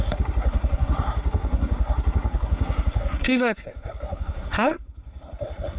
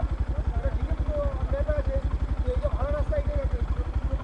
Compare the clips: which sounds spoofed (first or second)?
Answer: first